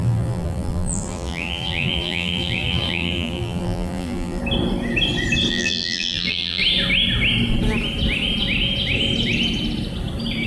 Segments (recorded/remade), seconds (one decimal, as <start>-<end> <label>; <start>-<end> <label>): 0.0-4.4 remade; 4.4-5.5 recorded; 5.5-6.6 remade; 6.6-10.5 recorded